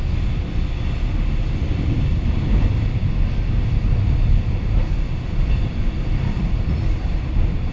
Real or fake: real